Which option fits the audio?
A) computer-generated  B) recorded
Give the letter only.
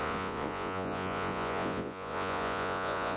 A